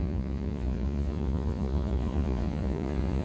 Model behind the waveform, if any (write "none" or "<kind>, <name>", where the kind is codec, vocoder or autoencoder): vocoder, Vocos